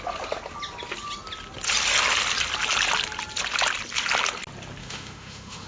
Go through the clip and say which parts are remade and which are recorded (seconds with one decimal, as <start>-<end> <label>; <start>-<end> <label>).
0.0-4.8 recorded; 4.8-5.7 remade